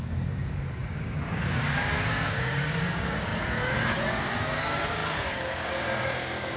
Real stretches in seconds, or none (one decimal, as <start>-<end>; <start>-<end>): none